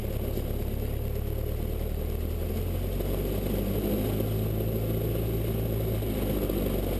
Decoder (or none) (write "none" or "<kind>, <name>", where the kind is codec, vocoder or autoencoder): none